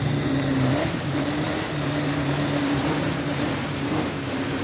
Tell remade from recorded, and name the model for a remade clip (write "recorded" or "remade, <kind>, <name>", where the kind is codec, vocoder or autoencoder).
remade, vocoder, BigVGAN v2